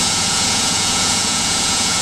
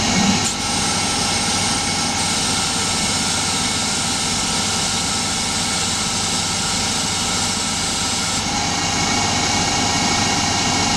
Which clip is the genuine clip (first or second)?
second